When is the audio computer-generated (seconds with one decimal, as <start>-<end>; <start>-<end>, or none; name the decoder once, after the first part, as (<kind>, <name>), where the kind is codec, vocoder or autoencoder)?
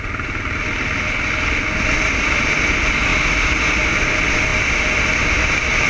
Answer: 0.0-0.6 (vocoder, BigVGAN v2); 1.9-4.5; 5.2-5.9